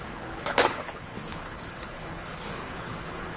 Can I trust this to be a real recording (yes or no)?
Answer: no